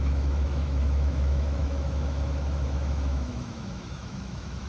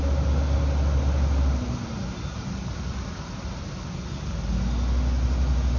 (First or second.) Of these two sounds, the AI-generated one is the first